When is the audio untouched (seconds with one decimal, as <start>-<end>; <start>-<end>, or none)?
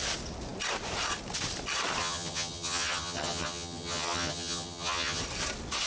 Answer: 0.0-2.0; 5.2-5.9